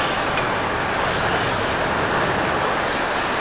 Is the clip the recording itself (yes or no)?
yes